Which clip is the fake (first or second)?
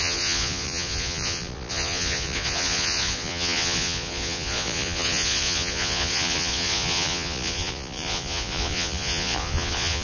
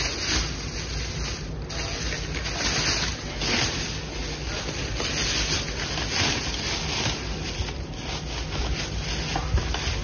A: first